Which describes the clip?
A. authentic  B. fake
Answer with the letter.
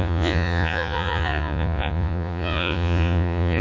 B